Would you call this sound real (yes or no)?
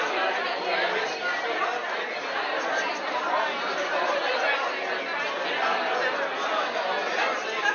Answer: yes